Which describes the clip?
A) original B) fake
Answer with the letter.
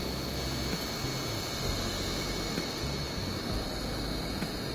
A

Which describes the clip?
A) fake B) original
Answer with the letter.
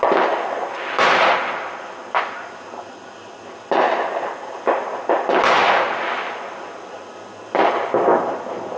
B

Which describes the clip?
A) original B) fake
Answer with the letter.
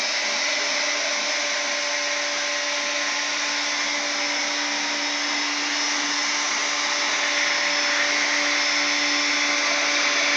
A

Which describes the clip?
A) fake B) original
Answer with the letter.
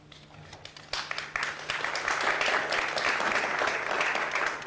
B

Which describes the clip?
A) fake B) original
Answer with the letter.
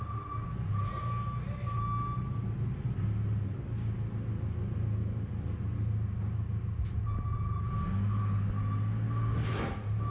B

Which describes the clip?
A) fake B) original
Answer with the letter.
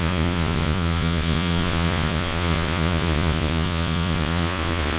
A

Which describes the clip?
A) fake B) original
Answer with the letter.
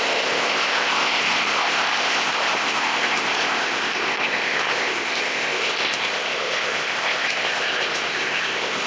A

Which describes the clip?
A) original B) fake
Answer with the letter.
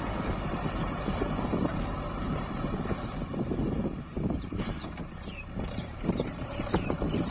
B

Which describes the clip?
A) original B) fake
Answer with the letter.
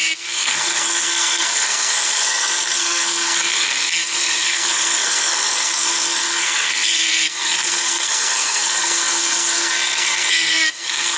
B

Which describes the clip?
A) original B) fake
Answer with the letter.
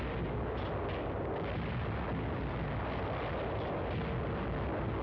A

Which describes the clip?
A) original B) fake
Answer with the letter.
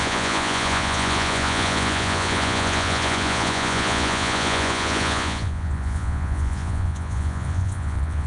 B